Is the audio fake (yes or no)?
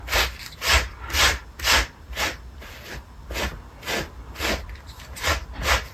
no